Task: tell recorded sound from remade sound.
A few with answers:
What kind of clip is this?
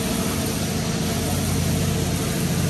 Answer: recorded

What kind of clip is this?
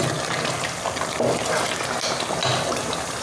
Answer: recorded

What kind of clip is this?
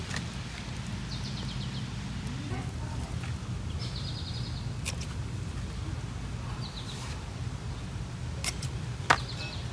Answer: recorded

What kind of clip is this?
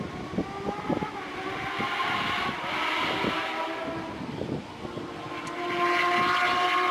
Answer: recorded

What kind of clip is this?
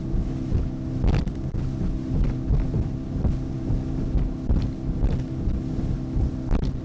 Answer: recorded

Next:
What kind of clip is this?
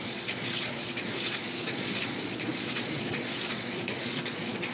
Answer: remade